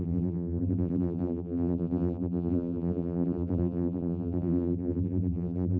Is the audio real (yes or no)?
no